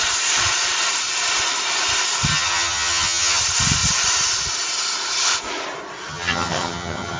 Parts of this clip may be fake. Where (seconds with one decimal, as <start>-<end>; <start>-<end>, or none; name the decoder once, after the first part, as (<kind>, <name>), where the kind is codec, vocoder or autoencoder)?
2.3-3.4 (vocoder, HiFi-GAN); 6.1-7.2